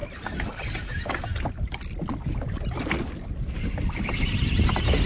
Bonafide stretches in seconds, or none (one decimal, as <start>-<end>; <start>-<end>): 0.0-5.1